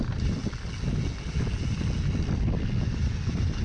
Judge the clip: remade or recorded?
recorded